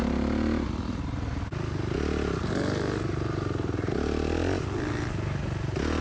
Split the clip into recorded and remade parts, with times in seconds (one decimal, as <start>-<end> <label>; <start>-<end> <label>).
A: 0.0-6.0 recorded